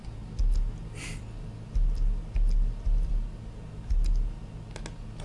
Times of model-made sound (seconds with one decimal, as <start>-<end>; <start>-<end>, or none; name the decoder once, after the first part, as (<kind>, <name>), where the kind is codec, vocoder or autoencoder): none